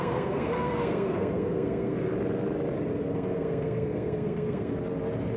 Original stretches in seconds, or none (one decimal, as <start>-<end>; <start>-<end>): 2.1-3.0; 4.7-5.4